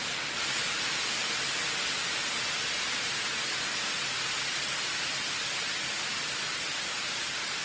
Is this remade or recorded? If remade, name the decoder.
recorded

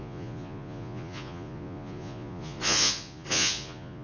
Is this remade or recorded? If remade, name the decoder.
remade, vocoder, Vocos